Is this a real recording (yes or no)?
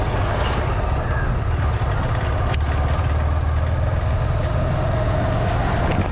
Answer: yes